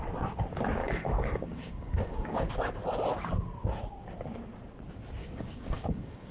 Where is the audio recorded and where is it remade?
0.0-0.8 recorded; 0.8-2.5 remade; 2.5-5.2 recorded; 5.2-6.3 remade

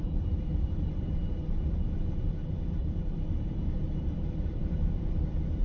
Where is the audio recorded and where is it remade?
0.0-5.6 remade

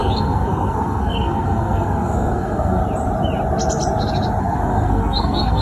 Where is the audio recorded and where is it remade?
0.0-2.8 remade; 2.8-4.4 recorded; 4.4-5.6 remade

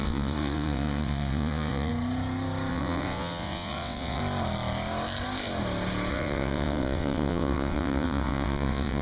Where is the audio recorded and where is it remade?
0.0-1.9 remade; 1.9-2.7 recorded; 2.7-4.2 remade; 4.2-6.1 recorded; 6.1-9.0 remade

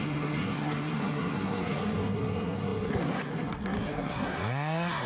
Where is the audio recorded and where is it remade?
0.0-5.1 remade

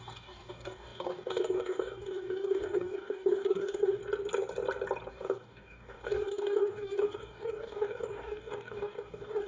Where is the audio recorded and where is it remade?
0.0-4.0 remade; 4.0-5.1 recorded; 5.1-9.5 remade

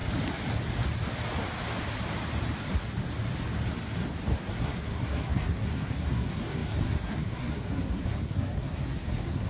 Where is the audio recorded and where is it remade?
0.0-4.4 recorded; 4.4-9.5 remade

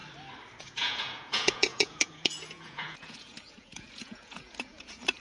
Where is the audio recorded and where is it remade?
0.0-0.6 recorded; 0.6-5.2 remade